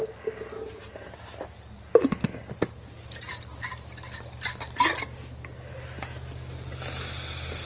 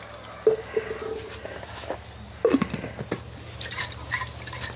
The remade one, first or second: second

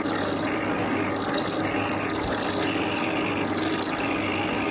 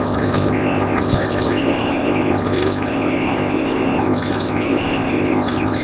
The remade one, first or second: second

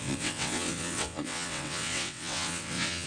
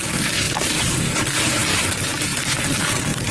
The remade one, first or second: first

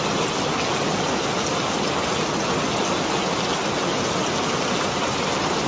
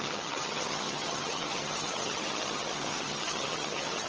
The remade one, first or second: second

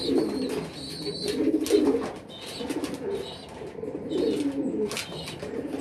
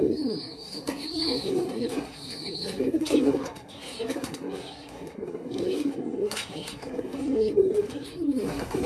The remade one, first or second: second